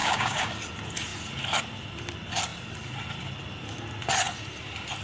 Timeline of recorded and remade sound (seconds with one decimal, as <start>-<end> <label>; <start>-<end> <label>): 0.0-0.5 remade; 0.5-5.0 recorded